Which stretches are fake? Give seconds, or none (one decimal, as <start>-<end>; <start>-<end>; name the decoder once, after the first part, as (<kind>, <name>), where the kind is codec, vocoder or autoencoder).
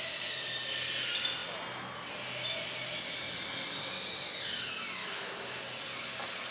5.0-5.6 (autoencoder, DAC-VAE)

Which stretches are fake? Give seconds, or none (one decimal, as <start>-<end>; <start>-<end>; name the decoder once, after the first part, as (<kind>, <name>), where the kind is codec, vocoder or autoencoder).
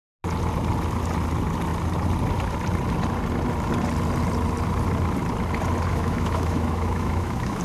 5.9-7.6 (autoencoder, DAC-VAE)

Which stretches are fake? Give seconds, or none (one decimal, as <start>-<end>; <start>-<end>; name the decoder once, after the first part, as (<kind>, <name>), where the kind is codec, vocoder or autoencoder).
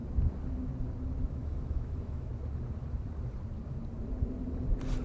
1.3-2.3 (autoencoder, DAC-VAE)